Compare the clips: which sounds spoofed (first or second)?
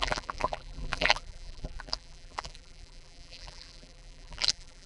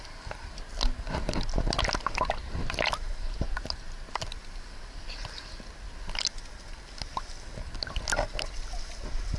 first